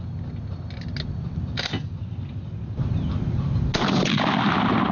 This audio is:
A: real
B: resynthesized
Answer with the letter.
A